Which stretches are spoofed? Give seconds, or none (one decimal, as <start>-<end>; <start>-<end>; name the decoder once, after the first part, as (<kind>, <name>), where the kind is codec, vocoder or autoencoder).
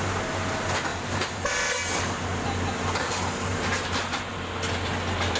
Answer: 0.9-2.0 (vocoder, BigVGAN v2); 3.5-4.3